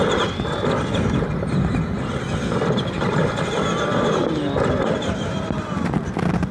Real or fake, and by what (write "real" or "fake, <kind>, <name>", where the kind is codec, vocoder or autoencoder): real